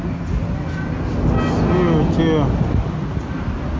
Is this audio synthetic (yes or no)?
no